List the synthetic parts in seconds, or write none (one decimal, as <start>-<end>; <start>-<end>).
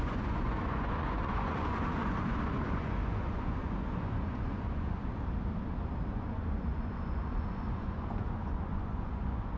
0.0-5.0; 6.1-9.6